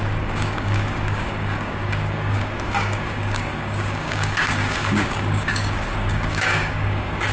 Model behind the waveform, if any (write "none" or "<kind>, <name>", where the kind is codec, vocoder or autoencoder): codec, DAC